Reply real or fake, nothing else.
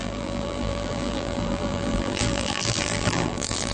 fake